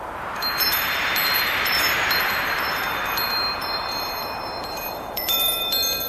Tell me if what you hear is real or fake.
fake